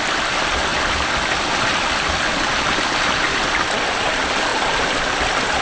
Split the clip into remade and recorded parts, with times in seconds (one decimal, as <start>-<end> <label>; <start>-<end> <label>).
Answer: 0.0-4.5 recorded; 4.5-5.1 remade; 5.1-5.6 recorded